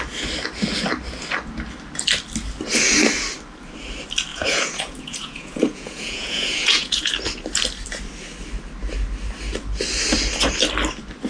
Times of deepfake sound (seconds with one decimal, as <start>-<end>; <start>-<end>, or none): 4.3-7.1